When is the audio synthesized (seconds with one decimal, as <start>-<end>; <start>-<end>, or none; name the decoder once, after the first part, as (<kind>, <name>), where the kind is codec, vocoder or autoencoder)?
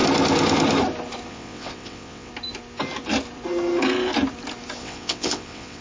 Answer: 1.3-2.3 (vocoder, WaveNeXt); 4.8-5.8